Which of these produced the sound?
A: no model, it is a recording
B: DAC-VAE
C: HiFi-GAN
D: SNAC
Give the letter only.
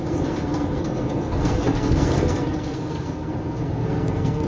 D